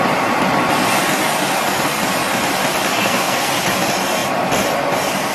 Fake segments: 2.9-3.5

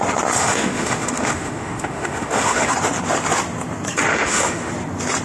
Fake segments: 0.4-2.7; 4.1-4.7

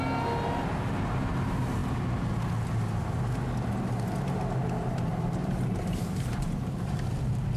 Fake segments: 5.4-7.0

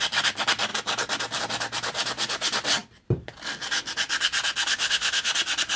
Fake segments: 4.7-5.3